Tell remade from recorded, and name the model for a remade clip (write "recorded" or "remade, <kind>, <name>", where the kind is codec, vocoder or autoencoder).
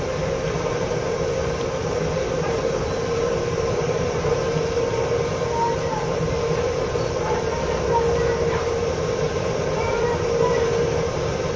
remade, vocoder, BigVGAN v2